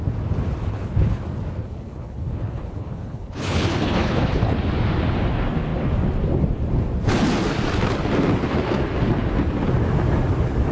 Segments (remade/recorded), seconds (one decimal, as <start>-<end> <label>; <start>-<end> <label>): 0.0-0.7 recorded; 0.7-1.2 remade; 1.2-1.6 recorded; 1.6-4.6 remade; 4.6-10.7 recorded